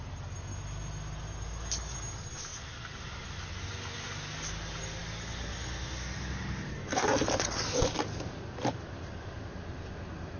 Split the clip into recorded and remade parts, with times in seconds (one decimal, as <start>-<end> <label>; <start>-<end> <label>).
0.0-10.4 recorded